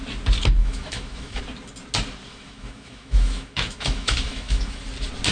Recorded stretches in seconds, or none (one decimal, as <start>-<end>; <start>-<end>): 0.0-0.6; 1.4-2.3; 4.8-5.3